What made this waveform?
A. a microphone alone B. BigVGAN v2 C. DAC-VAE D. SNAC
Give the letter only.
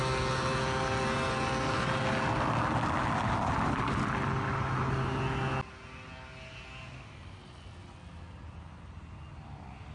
A